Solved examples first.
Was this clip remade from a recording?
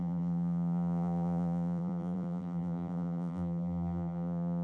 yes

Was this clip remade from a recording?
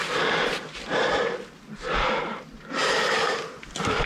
no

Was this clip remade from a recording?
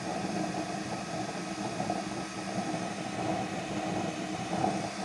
no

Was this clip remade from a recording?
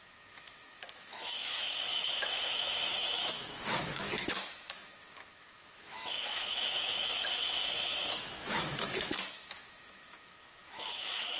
yes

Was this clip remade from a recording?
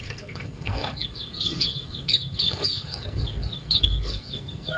yes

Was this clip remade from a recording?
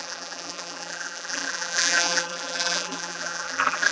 yes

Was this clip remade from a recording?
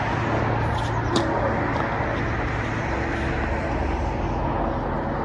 no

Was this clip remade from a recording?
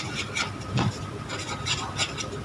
no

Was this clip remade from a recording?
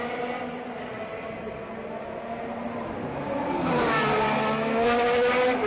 no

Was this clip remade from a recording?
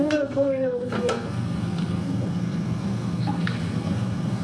yes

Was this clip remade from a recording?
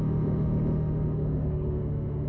yes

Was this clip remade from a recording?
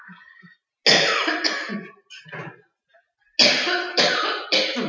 no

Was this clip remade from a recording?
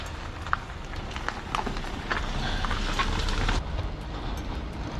no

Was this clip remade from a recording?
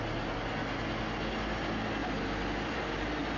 no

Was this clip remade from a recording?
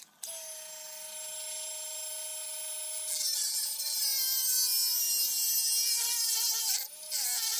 no